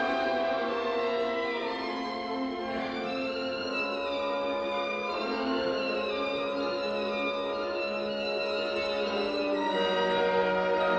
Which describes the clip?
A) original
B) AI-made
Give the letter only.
A